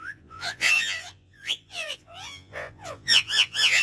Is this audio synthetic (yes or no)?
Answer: yes